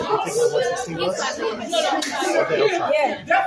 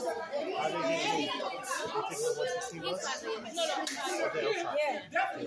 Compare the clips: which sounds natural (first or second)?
second